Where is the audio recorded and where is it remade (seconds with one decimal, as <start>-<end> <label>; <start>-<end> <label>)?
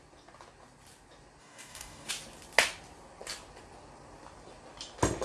0.0-1.4 recorded; 1.4-2.1 remade; 2.1-5.2 recorded